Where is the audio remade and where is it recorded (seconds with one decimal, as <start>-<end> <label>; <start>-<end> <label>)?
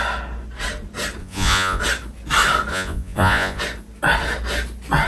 0.0-1.2 recorded; 1.2-1.8 remade; 1.8-2.7 recorded; 2.7-3.6 remade; 3.6-5.1 recorded